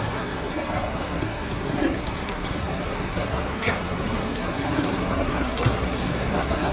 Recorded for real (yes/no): no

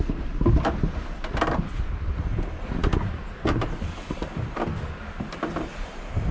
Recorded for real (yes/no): yes